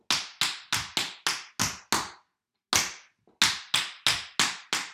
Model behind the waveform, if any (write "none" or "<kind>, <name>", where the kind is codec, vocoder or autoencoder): none